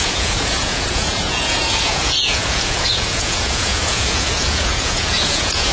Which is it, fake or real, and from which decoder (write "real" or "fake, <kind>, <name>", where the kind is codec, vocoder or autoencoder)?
fake, vocoder, Vocos